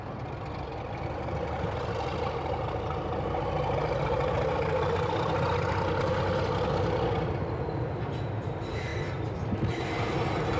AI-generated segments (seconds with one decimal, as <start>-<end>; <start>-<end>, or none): none